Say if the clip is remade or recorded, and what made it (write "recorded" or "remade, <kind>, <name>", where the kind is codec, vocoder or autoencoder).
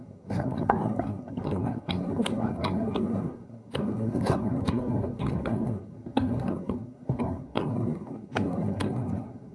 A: remade, codec, SNAC